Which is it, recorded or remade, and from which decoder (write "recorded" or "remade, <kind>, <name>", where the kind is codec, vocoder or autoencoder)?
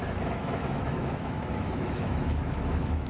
remade, autoencoder, DAC-VAE